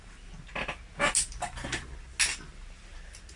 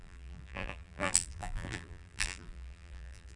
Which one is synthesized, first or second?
second